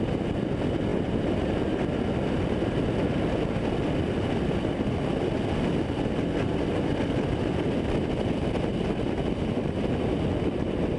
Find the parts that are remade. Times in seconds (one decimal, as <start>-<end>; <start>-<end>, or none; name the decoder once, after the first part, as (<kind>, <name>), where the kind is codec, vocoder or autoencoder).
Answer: none